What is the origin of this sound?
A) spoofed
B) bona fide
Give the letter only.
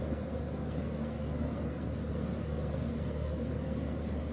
A